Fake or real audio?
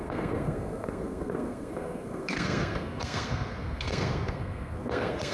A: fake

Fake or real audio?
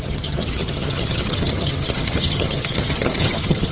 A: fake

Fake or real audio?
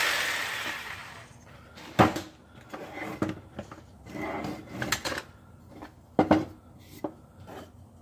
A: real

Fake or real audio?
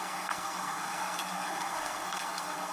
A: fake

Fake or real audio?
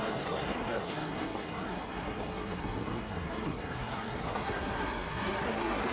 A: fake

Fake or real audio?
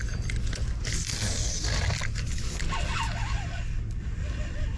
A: real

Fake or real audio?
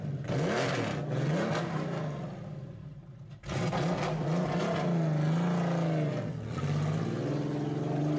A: real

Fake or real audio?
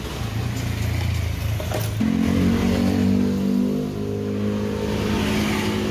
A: real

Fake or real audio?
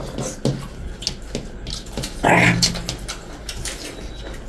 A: real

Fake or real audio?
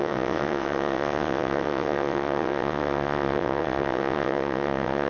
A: fake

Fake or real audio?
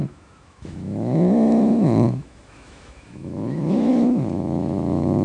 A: fake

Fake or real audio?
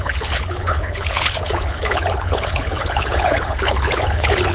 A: fake